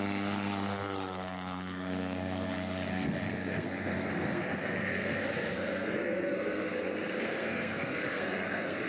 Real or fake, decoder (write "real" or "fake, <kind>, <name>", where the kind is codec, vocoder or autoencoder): fake, codec, SNAC